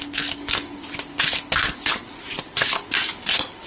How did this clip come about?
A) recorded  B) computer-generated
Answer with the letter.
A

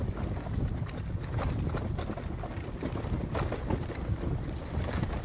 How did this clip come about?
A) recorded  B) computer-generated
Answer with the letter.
A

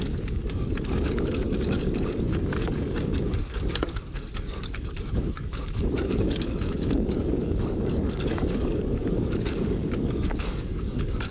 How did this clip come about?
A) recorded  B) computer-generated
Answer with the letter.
B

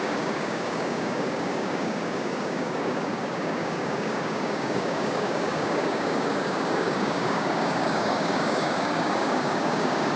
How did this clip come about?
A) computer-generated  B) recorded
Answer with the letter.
A